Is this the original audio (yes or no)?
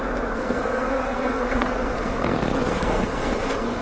no